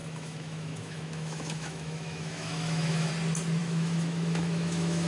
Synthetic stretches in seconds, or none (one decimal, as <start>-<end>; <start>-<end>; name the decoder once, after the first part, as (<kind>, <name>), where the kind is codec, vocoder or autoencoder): 0.0-3.1 (autoencoder, DAC-VAE); 3.6-5.1